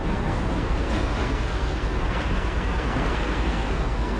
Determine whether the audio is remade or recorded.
remade